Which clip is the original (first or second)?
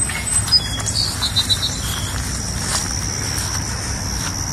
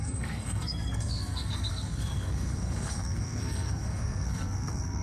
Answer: first